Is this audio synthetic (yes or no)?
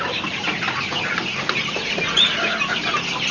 no